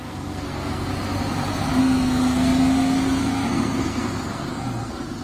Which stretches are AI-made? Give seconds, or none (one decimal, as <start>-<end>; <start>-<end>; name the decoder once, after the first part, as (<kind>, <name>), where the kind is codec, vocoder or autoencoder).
0.0-0.9 (codec, SNAC); 1.8-5.2

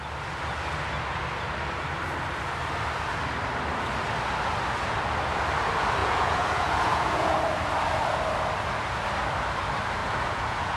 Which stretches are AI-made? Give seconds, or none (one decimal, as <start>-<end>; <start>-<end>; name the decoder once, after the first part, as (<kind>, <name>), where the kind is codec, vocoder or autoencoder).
6.0-7.4 (vocoder, Vocos); 10.0-10.8

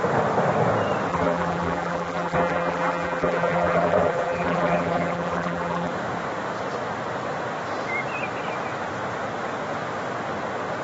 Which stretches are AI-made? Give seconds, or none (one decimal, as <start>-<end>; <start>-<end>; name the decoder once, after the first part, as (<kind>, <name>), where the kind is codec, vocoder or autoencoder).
1.1-5.9 (vocoder, BigVGAN v2)

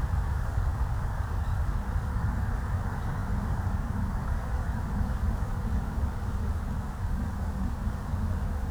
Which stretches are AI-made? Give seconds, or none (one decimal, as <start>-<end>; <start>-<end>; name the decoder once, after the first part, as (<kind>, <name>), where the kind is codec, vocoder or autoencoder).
0.0-8.7 (codec, DAC)